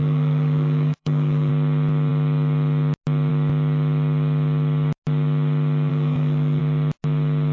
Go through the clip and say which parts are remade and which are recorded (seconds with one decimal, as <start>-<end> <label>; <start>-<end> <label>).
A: 0.0-1.5 remade; 1.5-5.9 recorded; 5.9-6.6 remade; 6.6-7.5 recorded